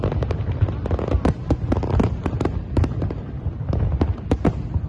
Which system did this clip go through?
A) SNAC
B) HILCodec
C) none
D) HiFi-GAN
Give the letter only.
C